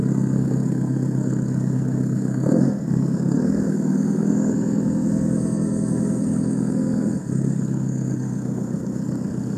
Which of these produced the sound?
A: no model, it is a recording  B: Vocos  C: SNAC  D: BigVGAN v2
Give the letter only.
C